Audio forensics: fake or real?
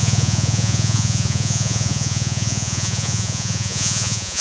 fake